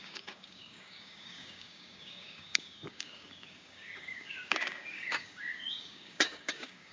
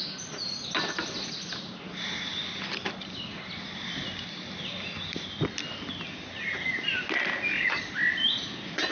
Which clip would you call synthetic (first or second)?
first